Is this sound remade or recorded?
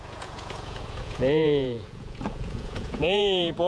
remade